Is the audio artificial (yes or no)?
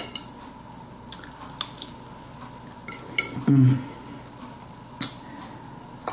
no